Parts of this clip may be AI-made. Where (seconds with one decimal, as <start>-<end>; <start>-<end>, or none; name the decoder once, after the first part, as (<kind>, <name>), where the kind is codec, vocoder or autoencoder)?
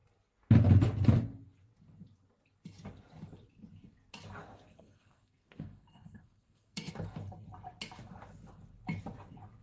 4.7-6.9 (codec, SNAC)